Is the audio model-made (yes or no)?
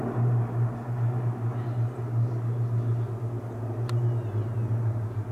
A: no